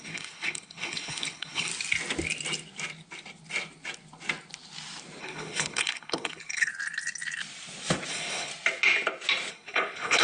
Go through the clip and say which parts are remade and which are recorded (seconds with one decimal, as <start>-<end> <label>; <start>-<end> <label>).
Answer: 0.0-1.7 remade; 1.7-5.2 recorded; 5.2-6.7 remade; 6.7-8.1 recorded; 8.1-8.5 remade; 8.5-9.5 recorded; 9.5-10.2 remade